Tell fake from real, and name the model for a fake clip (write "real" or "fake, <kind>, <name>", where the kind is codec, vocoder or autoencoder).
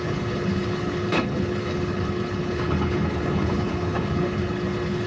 fake, codec, HILCodec